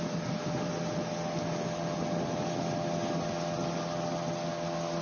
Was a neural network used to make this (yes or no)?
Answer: no